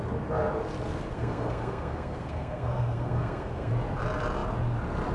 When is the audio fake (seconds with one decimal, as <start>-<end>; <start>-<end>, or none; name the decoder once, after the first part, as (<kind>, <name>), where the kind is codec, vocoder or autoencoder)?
1.1-3.7 (codec, SNAC)